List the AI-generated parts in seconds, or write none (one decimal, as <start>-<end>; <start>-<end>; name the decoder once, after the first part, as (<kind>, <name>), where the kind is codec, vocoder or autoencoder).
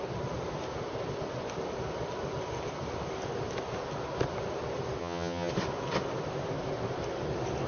5.0-5.5 (vocoder, HiFi-GAN)